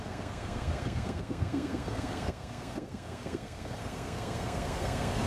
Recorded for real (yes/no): no